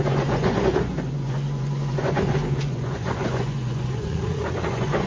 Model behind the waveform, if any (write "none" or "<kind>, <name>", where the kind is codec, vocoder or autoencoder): vocoder, Vocos